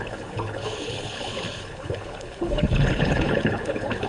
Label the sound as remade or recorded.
remade